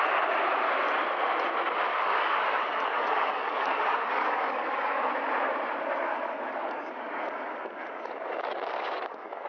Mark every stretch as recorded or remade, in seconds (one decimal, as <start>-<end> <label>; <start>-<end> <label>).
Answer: 0.0-1.9 recorded; 1.9-5.1 remade; 5.1-6.1 recorded; 6.1-9.5 remade